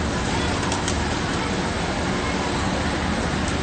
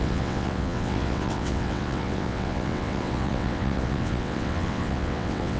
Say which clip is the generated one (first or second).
second